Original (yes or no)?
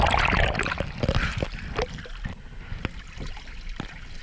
yes